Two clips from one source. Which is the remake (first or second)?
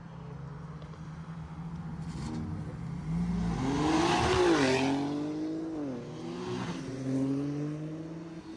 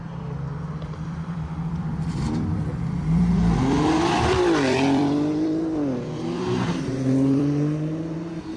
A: second